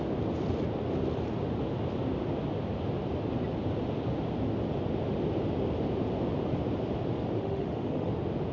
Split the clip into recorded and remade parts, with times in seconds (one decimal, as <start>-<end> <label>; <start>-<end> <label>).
0.0-7.4 recorded; 7.4-8.1 remade; 8.1-8.5 recorded